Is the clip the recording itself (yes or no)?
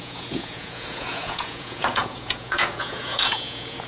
no